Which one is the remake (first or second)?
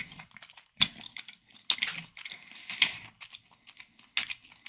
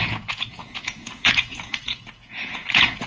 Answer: second